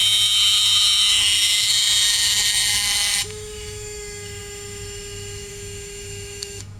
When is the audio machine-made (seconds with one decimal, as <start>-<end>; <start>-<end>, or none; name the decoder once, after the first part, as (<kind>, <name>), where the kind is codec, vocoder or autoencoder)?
0.0-6.8 (autoencoder, DAC-VAE)